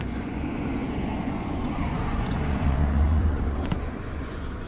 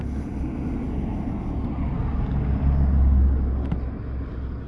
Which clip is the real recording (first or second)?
second